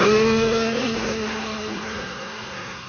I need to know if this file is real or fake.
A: fake